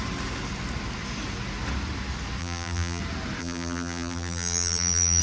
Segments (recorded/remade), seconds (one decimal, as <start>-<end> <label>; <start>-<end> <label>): 0.0-2.4 recorded; 2.4-3.0 remade; 3.0-3.4 recorded; 3.4-5.2 remade